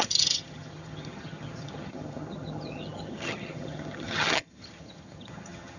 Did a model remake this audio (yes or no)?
yes